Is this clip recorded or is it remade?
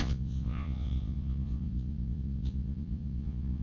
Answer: remade